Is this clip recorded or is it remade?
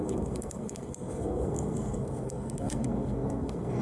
remade